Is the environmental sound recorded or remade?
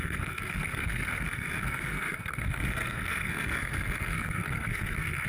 remade